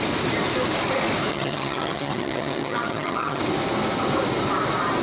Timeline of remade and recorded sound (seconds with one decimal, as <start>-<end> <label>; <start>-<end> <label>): 0.0-1.3 recorded; 1.3-3.4 remade; 3.4-5.0 recorded